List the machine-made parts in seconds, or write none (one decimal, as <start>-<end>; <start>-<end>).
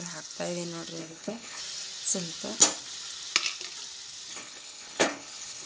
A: 1.0-1.6; 4.3-5.7